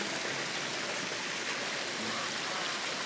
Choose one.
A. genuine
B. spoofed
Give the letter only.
A